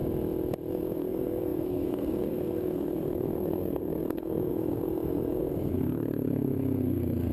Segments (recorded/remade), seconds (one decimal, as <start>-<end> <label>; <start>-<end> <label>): 0.0-0.7 recorded; 0.7-7.3 remade